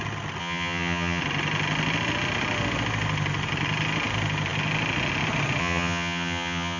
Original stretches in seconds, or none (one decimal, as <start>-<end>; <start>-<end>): 0.0-0.4; 1.2-5.6